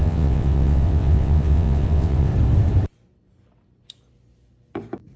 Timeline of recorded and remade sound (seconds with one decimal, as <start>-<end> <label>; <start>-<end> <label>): 0.0-2.3 remade; 2.3-5.2 recorded

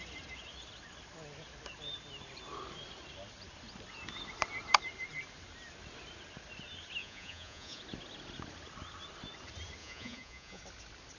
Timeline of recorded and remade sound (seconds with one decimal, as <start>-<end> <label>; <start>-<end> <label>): 0.0-7.0 recorded; 7.0-7.8 remade; 7.8-9.8 recorded; 9.8-10.6 remade; 10.6-11.2 recorded

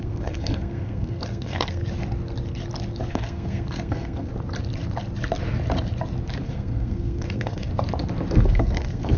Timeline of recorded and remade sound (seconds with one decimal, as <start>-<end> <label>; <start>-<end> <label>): 0.0-1.8 remade; 1.8-3.1 recorded; 3.1-4.3 remade; 4.3-6.4 recorded; 6.4-7.7 remade; 7.7-8.3 recorded; 8.3-9.2 remade

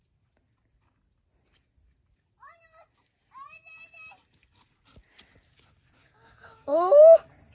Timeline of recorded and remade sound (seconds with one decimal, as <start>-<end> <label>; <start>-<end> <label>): 0.0-6.0 recorded; 6.0-7.0 remade; 7.0-7.5 recorded